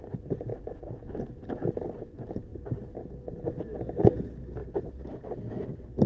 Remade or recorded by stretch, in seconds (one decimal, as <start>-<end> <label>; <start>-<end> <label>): 0.0-0.5 recorded; 0.5-1.7 remade; 1.7-2.5 recorded; 2.5-3.5 remade; 3.5-4.6 recorded; 4.6-5.5 remade; 5.5-6.1 recorded